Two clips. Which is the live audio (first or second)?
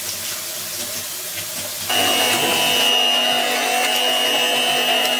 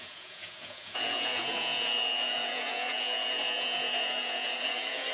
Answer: first